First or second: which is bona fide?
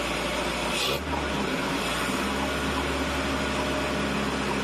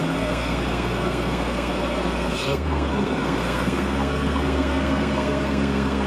first